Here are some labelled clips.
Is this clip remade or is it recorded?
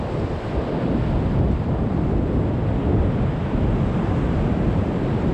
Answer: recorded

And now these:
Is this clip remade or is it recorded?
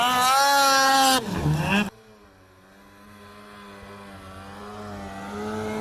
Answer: recorded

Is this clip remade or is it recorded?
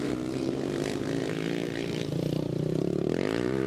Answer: remade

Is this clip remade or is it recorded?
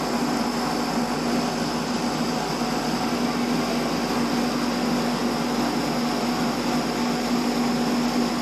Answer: recorded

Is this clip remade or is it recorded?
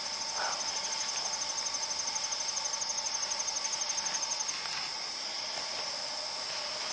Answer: recorded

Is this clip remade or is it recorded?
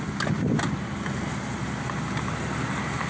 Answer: recorded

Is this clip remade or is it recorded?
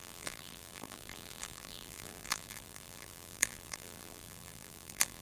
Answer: remade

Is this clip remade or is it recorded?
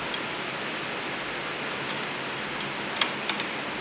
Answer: recorded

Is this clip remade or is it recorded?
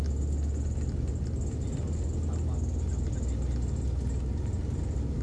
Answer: recorded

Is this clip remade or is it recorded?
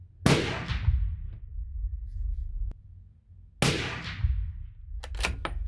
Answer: recorded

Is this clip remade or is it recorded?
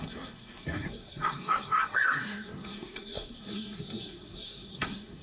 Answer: remade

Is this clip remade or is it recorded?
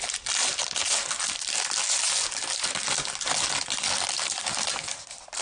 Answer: recorded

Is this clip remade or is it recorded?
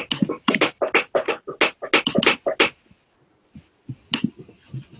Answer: recorded